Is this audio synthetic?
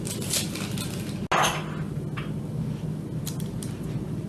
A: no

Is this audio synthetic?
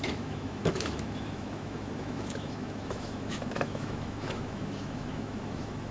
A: yes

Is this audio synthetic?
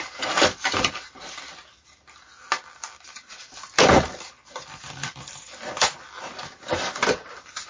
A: no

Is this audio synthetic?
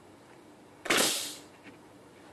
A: yes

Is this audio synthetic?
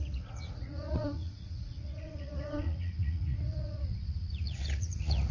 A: yes